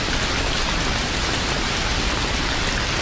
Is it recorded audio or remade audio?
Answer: recorded